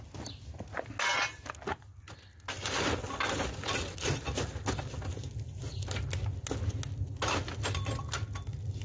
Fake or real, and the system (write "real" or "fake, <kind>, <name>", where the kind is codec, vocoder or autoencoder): real